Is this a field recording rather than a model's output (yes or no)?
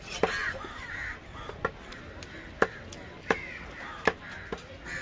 yes